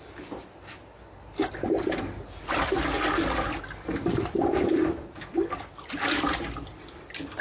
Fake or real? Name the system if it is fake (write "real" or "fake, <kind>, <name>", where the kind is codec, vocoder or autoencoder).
real